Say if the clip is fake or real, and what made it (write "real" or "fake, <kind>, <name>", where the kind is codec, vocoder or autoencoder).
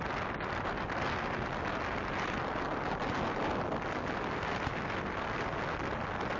real